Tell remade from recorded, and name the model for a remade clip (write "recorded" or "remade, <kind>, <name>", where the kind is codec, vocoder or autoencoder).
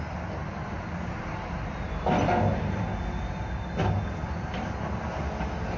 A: recorded